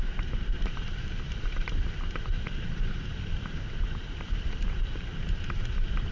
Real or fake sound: fake